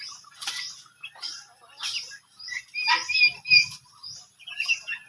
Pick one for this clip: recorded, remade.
recorded